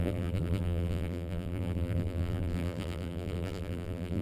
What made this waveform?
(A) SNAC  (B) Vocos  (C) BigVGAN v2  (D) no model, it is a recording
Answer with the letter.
C